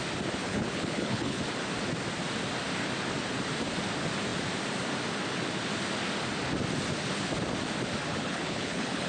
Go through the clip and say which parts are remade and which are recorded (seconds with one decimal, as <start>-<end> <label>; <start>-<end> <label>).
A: 0.0-0.4 recorded; 0.4-1.4 remade; 1.4-8.1 recorded; 8.1-9.1 remade